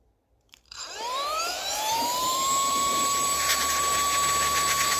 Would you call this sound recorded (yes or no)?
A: no